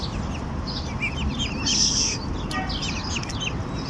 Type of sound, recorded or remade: recorded